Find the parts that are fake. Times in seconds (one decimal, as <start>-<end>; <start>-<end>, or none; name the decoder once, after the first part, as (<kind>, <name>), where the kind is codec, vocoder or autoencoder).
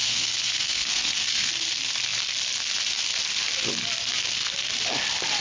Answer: 0.0-1.5 (codec, SNAC)